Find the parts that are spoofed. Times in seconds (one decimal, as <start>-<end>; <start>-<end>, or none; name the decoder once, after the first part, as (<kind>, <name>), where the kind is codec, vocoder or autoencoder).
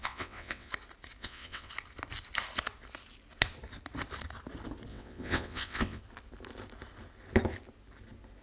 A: 0.0-0.7 (vocoder, WaveNeXt); 1.2-1.7; 4.9-6.0